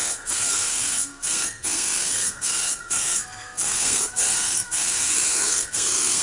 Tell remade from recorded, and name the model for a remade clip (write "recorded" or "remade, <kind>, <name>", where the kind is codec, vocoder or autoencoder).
remade, codec, SNAC